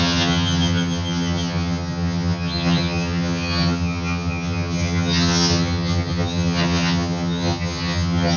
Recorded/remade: remade